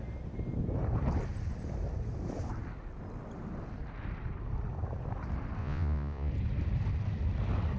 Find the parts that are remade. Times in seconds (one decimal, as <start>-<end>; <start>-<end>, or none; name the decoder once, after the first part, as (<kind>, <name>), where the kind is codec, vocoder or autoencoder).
5.6-6.3 (vocoder, Vocos)